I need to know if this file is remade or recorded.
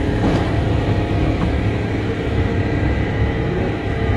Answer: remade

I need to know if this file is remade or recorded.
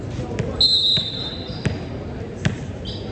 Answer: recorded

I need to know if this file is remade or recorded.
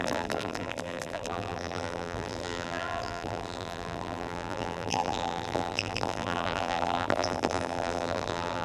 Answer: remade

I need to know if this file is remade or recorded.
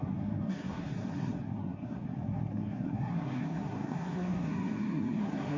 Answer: remade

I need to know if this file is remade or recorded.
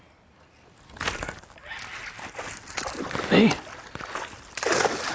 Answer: recorded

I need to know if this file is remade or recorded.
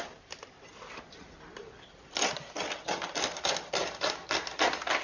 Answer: remade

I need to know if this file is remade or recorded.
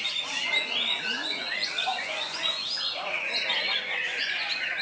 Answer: remade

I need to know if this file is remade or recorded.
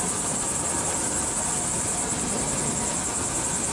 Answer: recorded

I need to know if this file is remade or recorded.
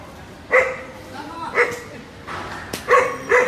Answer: recorded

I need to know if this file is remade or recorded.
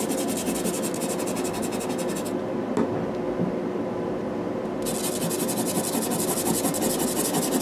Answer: recorded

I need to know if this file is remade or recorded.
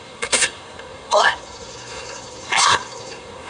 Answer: remade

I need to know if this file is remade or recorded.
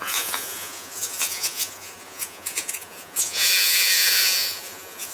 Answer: remade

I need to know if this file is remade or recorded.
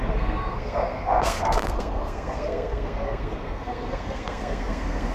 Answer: remade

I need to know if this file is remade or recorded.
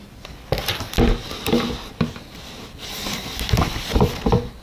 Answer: recorded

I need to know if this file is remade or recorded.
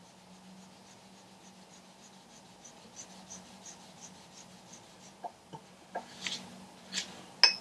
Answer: recorded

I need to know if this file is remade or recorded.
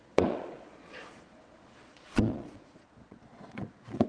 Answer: remade